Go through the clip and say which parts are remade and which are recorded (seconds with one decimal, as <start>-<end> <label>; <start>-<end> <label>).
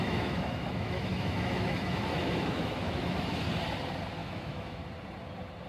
0.0-3.4 remade; 3.4-4.2 recorded; 4.2-4.8 remade; 4.8-5.7 recorded